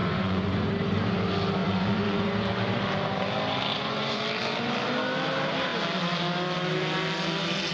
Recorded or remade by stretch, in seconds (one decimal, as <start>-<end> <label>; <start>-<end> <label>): 0.0-0.7 remade; 0.7-1.6 recorded; 1.6-2.2 remade; 2.2-3.7 recorded; 3.7-4.2 remade; 4.2-7.7 recorded